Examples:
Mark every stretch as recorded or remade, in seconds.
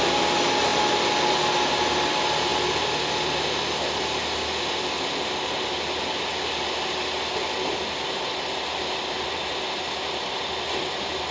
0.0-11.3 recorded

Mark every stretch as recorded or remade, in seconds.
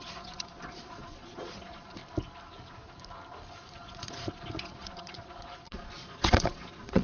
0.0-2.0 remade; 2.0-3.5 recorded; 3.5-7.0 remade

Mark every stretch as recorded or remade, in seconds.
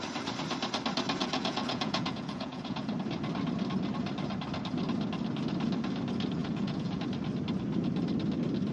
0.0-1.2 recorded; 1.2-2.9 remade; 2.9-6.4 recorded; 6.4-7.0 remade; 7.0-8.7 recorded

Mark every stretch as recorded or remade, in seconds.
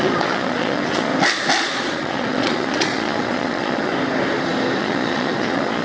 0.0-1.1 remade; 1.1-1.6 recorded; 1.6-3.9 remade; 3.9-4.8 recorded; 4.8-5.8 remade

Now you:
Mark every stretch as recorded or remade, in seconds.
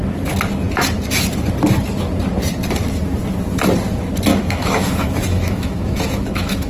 0.0-4.3 recorded; 4.3-6.7 remade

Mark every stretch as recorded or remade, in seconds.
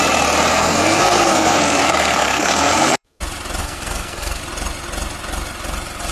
0.0-0.5 recorded; 0.5-3.2 remade; 3.2-3.6 recorded; 3.6-4.4 remade; 4.4-6.1 recorded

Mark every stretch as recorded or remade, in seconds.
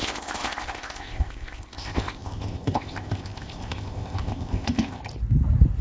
0.0-5.0 remade; 5.0-5.8 recorded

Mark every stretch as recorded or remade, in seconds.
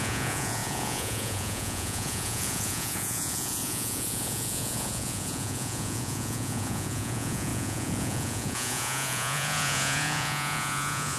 0.0-11.2 remade